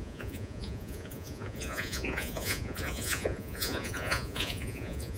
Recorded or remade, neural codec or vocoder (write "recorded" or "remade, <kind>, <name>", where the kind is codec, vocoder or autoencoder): remade, vocoder, Vocos